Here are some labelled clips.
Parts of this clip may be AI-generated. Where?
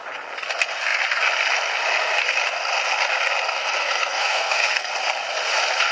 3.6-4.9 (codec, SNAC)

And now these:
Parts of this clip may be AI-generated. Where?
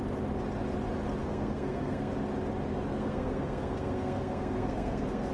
1.2-2.1 (codec, SNAC); 2.9-5.3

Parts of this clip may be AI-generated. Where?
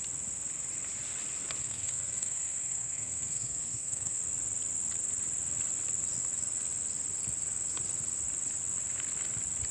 1.6-4.2 (codec, SNAC)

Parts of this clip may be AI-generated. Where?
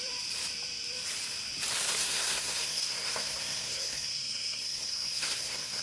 2.0-5.8 (codec, SNAC)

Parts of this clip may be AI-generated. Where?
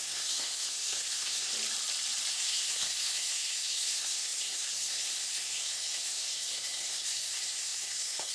0.0-1.5 (codec, SNAC); 2.3-8.3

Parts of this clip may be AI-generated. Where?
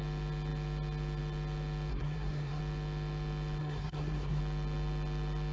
1.9-2.6 (codec, SNAC); 3.6-4.4